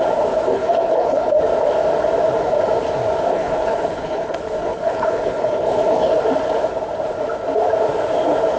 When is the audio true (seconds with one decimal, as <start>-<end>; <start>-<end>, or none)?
0.0-0.5; 1.3-3.3; 6.2-8.6